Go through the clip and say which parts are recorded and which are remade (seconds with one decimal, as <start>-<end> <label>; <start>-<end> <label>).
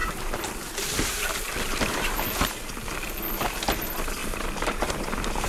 0.0-2.5 remade; 2.5-4.2 recorded; 4.2-5.5 remade